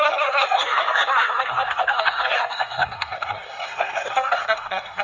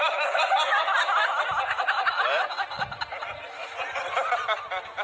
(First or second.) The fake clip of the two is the first